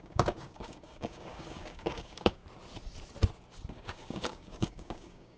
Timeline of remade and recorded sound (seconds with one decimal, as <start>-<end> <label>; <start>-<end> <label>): 0.0-2.4 remade; 2.4-3.7 recorded; 3.7-5.4 remade